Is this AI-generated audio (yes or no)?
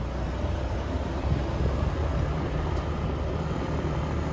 no